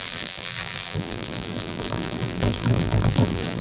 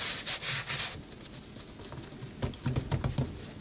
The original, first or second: second